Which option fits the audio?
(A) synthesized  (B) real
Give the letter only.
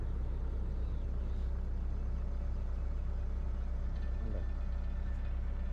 B